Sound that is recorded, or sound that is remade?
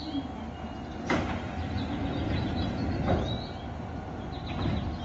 recorded